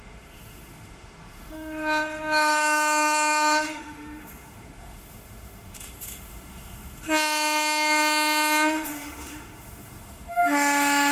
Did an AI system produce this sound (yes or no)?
yes